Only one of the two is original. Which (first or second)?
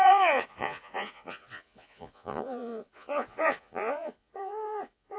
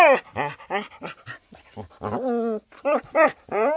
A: second